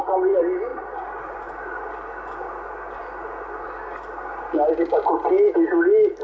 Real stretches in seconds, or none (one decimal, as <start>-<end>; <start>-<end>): 0.0-6.2